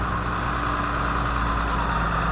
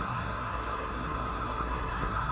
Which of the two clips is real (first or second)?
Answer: first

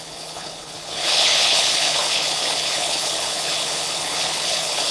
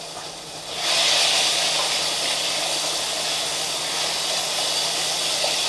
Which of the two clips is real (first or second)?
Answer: second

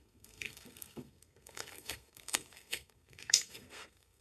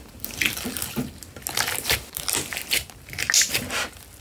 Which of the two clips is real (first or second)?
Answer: second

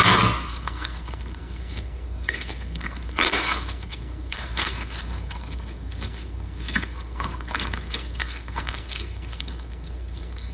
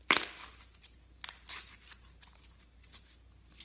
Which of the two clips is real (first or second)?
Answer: second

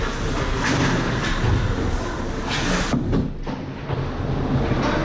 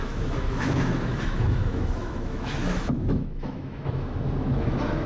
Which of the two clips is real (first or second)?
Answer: first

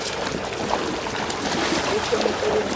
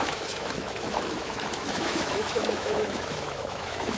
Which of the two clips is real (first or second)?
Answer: first